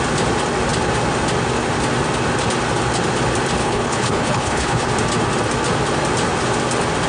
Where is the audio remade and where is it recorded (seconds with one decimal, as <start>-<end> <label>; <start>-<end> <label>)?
0.0-3.6 recorded; 3.6-4.9 remade; 4.9-7.1 recorded